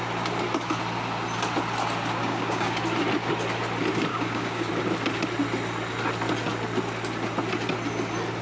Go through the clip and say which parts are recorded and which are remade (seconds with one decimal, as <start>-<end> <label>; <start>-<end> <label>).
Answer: 0.0-2.2 recorded; 2.2-2.8 remade; 2.8-4.1 recorded; 4.1-4.7 remade; 4.7-8.4 recorded

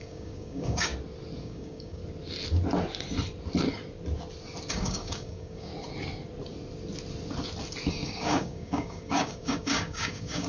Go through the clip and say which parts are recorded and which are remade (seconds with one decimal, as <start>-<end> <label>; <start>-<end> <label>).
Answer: 0.0-0.9 remade; 0.9-1.4 recorded; 1.4-2.0 remade; 2.0-4.7 recorded; 4.7-5.7 remade; 5.7-7.9 recorded; 7.9-10.5 remade

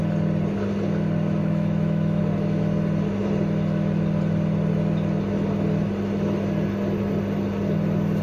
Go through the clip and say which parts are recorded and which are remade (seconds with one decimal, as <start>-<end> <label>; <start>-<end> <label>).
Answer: 0.0-1.4 recorded; 1.4-2.2 remade; 2.2-8.2 recorded

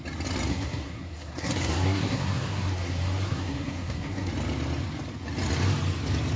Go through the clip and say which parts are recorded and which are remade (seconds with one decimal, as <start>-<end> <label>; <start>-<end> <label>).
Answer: 0.0-0.5 recorded; 0.5-4.3 remade; 4.3-6.4 recorded

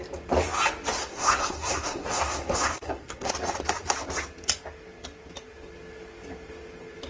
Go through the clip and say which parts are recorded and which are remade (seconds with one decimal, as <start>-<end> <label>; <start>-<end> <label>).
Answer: 0.0-1.0 recorded; 1.0-3.3 remade; 3.3-7.1 recorded

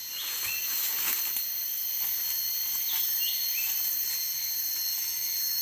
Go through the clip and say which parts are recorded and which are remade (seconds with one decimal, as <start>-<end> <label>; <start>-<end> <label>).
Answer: 0.0-5.6 recorded

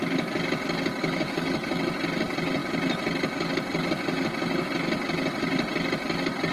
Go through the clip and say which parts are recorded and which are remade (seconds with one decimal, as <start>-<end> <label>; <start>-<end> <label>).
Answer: 0.0-1.0 recorded; 1.0-1.8 remade; 1.8-6.5 recorded